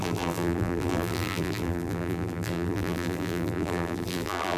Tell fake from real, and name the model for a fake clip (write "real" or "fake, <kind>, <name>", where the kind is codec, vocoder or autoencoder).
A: fake, vocoder, BigVGAN v2